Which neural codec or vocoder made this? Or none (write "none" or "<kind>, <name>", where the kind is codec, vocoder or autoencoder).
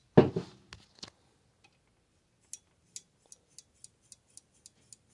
none